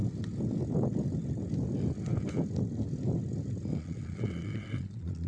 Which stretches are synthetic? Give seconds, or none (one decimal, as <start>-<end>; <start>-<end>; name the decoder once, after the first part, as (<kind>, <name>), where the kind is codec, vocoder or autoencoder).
3.7-5.3 (vocoder, Vocos)